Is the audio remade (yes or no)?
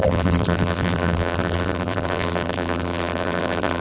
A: yes